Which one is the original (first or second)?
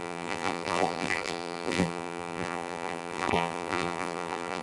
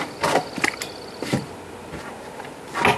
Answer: second